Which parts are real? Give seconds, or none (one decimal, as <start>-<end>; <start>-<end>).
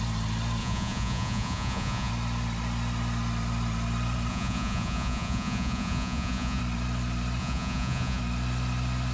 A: 0.0-0.6; 2.1-4.3; 6.6-7.4; 8.2-9.1